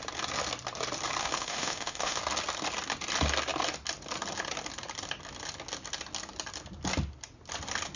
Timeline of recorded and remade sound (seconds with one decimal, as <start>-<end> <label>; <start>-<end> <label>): 0.0-1.2 recorded; 1.2-2.2 remade; 2.2-8.0 recorded

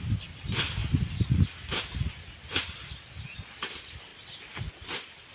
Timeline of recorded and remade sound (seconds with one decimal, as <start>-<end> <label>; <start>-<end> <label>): 0.0-5.3 recorded

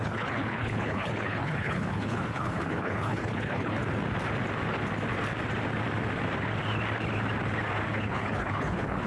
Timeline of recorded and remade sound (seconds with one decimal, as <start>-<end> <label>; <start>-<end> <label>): 0.0-3.8 remade; 3.8-7.9 recorded; 7.9-9.1 remade

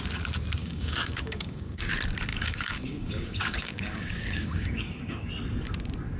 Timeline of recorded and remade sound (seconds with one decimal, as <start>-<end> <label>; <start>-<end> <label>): 0.0-0.6 recorded; 0.6-1.9 remade; 1.9-2.3 recorded; 2.3-5.3 remade; 5.3-6.2 recorded

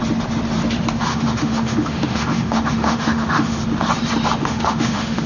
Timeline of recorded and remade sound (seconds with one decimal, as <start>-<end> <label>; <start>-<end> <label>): 0.0-1.1 recorded; 1.1-3.6 remade; 3.6-4.4 recorded; 4.4-5.3 remade